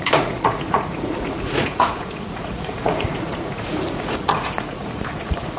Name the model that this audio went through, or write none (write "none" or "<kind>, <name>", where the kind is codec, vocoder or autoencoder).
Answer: vocoder, Vocos